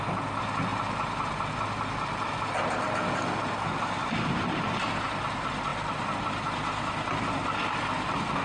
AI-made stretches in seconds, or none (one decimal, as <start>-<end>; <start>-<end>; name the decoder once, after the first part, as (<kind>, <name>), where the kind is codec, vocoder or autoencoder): none